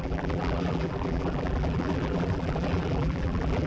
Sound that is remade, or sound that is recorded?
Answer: remade